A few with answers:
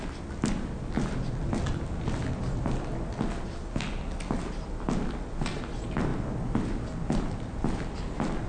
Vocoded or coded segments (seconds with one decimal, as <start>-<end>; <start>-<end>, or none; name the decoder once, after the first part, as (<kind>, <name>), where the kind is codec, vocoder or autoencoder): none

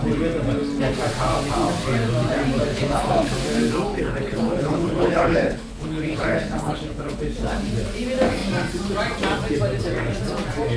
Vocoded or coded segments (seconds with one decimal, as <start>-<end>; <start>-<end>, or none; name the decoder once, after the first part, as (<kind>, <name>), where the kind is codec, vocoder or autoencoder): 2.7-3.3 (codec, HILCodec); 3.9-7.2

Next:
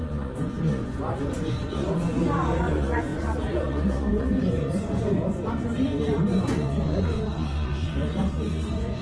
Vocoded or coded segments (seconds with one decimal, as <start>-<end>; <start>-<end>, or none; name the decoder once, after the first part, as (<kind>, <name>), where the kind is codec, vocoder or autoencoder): 0.0-9.0 (vocoder, Vocos)